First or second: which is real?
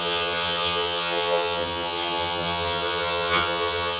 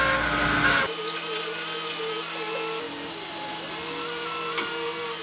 second